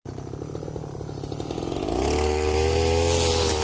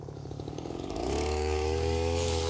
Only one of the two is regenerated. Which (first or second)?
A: second